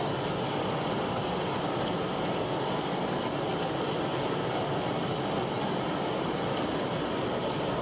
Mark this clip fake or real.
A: real